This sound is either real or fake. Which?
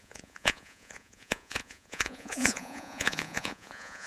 fake